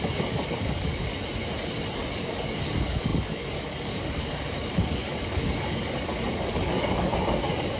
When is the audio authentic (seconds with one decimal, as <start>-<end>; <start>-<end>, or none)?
1.1-2.1